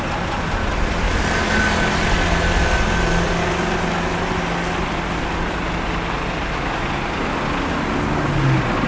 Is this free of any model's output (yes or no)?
yes